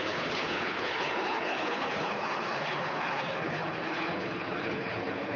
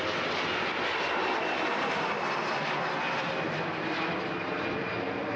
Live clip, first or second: second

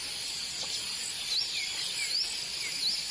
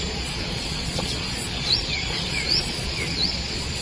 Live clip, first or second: first